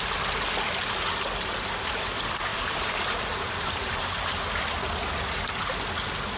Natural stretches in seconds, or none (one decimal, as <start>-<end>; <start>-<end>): 0.0-2.5; 4.2-6.4